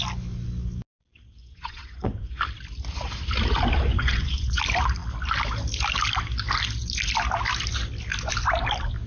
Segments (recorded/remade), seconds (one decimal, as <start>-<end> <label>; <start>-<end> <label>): 0.0-1.4 recorded; 1.4-2.4 remade; 2.4-3.9 recorded; 3.9-4.6 remade; 4.6-9.1 recorded